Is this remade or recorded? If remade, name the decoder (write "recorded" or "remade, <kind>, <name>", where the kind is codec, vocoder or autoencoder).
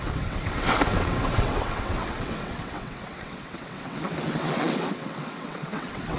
remade, vocoder, WaveNeXt